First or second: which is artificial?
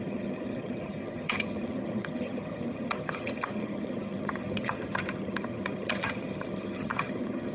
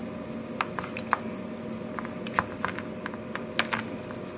first